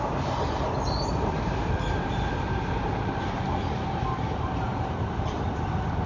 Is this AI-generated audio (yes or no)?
yes